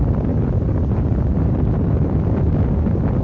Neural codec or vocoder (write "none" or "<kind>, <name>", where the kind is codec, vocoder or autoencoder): none